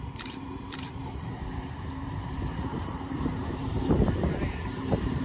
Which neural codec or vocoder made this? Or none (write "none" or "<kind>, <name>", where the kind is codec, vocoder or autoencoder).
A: vocoder, BigVGAN v2